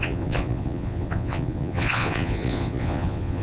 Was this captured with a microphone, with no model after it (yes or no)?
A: no